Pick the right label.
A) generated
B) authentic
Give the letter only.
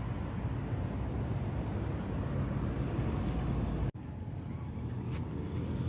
B